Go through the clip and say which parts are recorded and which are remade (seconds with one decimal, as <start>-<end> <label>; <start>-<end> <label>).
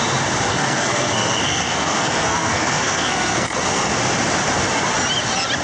0.0-0.5 recorded; 0.5-3.9 remade; 3.9-5.6 recorded